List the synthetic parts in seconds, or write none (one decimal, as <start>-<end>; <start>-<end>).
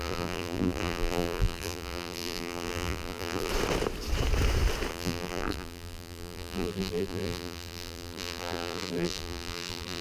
0.0-3.5; 4.9-10.0